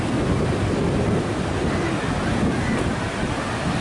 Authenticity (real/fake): real